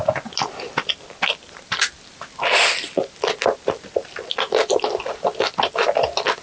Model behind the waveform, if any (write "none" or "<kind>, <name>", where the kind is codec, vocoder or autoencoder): none